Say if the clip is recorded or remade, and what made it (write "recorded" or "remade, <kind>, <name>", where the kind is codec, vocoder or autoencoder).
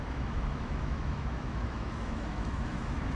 remade, autoencoder, DAC-VAE